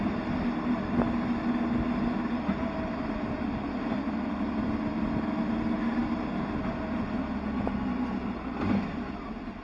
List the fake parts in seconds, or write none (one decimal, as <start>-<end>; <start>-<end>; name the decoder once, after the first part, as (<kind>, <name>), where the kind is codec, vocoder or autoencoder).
none